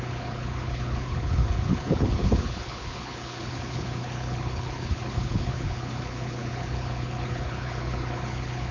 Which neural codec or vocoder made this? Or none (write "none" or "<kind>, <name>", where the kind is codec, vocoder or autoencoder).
codec, HILCodec